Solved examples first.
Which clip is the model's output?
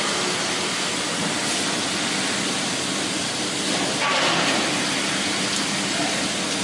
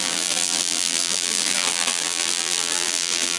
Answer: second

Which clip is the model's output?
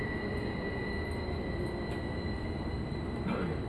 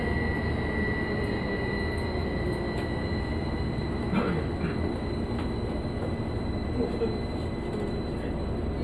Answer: first